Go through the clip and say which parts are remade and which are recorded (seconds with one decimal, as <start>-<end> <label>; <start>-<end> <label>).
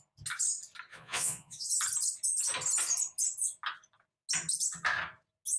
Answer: 0.0-0.9 recorded; 0.9-1.7 remade; 1.7-5.6 recorded